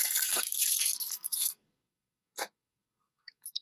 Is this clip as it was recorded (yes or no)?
no